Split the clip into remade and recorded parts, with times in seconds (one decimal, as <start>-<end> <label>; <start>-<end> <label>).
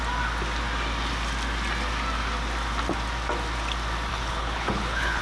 0.0-4.1 recorded; 4.1-5.2 remade